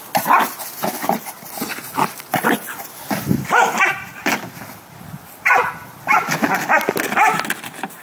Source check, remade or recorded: recorded